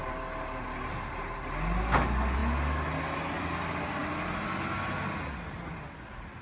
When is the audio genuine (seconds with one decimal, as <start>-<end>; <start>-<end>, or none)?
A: 0.0-6.4